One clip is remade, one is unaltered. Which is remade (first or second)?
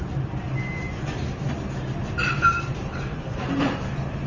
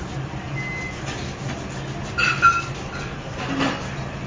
first